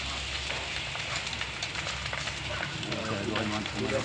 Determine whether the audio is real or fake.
real